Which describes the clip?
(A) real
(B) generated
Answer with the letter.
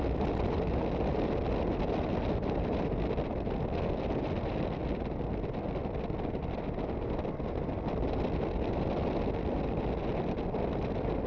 A